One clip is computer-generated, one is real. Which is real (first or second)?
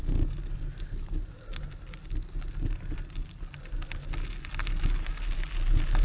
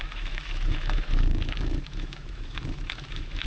first